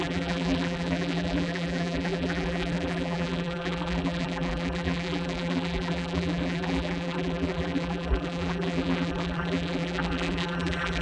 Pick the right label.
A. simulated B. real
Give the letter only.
A